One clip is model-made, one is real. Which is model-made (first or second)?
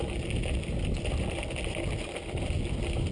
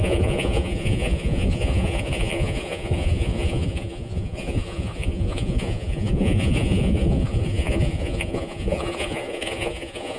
second